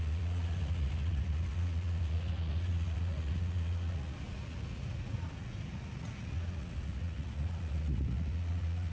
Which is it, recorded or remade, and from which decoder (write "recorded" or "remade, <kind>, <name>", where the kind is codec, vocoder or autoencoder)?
remade, vocoder, Vocos